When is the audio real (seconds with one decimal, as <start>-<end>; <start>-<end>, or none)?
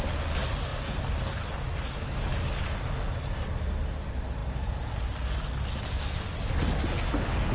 0.0-7.5